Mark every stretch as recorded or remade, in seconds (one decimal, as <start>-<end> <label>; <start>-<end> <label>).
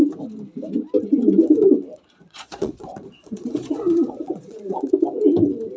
0.0-1.4 recorded; 1.4-4.9 remade; 4.9-5.8 recorded